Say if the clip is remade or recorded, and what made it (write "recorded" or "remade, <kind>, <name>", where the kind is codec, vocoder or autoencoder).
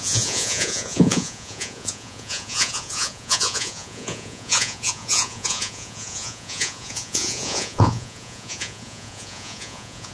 remade, vocoder, Vocos